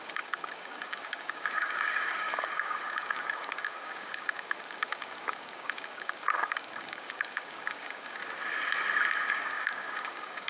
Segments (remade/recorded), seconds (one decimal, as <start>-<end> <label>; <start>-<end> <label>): 0.0-8.2 remade; 8.2-9.1 recorded; 9.1-10.5 remade